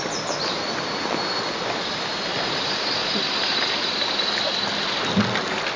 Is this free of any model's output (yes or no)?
yes